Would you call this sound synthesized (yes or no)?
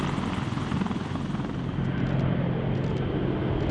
no